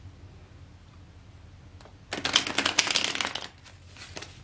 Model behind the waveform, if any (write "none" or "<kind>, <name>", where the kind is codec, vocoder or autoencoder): none